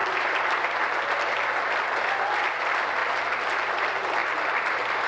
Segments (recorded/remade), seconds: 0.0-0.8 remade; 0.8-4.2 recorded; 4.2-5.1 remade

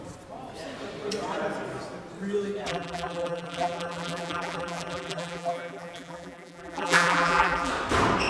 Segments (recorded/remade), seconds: 0.0-2.7 recorded; 2.7-7.7 remade; 7.7-8.3 recorded

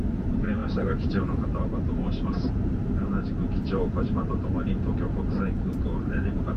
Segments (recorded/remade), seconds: 0.0-6.6 remade

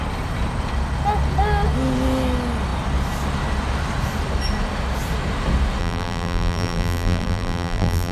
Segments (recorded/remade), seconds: 0.0-5.8 recorded; 5.8-8.1 remade

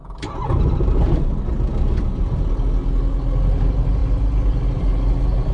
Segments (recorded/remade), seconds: 0.0-2.4 remade; 2.4-5.5 recorded

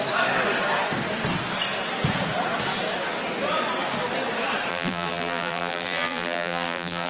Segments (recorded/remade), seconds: 0.0-4.7 recorded; 4.7-7.1 remade

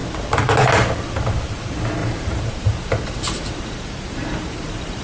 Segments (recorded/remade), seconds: 0.0-2.0 recorded; 2.0-5.0 remade